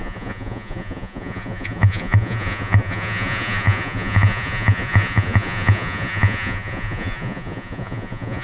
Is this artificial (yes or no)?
yes